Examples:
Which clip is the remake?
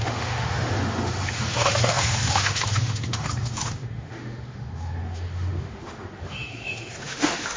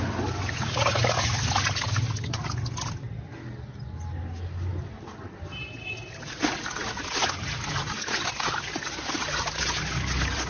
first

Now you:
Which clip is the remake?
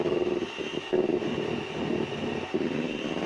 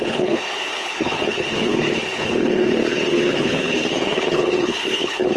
second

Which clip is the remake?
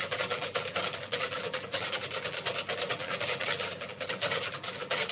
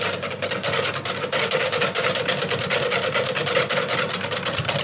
first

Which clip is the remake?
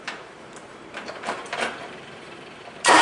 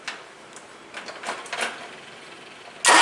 first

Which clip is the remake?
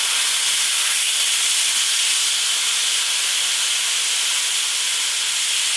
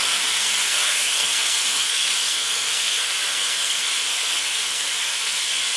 second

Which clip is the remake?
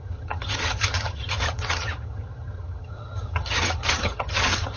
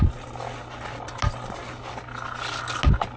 first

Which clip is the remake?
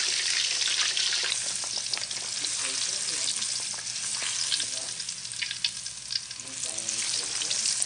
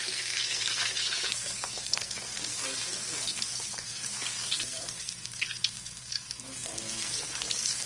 second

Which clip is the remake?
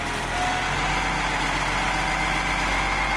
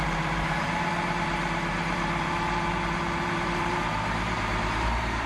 second